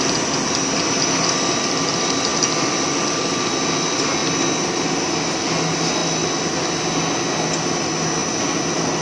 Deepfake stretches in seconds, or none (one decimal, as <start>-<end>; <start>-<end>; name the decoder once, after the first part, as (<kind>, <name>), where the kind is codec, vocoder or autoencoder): none